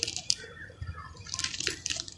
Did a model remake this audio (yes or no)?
yes